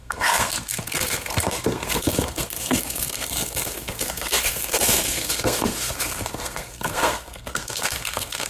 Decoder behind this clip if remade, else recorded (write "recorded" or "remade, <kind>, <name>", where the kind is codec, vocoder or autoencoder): remade, codec, SNAC